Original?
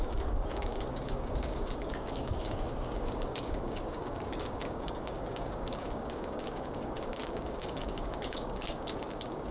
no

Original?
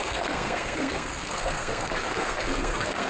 no